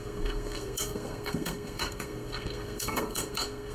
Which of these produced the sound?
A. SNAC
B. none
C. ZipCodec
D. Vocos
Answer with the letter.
A